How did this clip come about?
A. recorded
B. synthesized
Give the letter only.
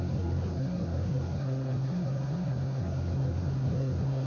B